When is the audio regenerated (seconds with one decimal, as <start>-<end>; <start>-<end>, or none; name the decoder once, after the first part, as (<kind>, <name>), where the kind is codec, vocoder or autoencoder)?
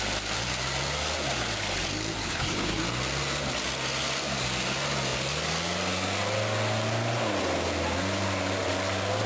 2.2-2.8 (codec, HILCodec)